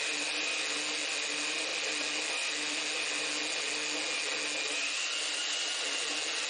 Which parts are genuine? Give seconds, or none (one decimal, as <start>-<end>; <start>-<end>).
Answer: 0.0-6.5